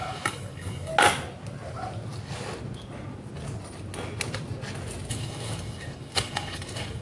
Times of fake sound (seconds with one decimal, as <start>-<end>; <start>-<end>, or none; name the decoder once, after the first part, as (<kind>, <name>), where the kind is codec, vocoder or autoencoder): 0.0-0.9 (codec, DAC); 5.1-7.0